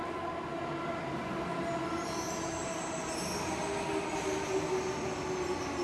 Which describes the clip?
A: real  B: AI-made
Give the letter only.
A